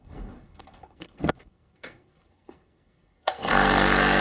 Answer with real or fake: fake